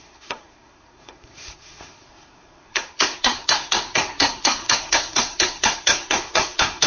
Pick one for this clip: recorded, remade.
remade